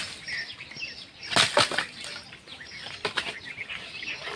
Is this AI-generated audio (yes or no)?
no